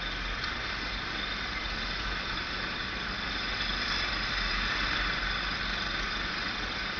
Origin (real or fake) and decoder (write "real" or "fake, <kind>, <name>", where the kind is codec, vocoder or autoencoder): real